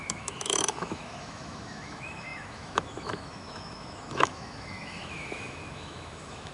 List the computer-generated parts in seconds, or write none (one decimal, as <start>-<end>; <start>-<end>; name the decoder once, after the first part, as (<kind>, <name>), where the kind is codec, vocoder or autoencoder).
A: 0.0-6.5 (autoencoder, DAC-VAE)